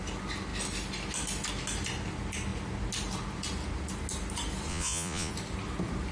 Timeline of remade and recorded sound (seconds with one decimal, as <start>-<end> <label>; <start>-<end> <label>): 0.0-4.7 recorded; 4.7-5.3 remade; 5.3-6.1 recorded